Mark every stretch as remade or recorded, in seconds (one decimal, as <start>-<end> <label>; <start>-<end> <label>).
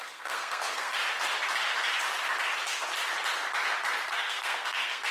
0.0-1.0 remade; 1.0-4.1 recorded; 4.1-5.1 remade